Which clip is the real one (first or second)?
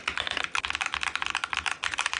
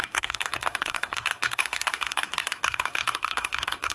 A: first